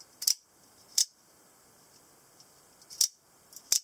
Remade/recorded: recorded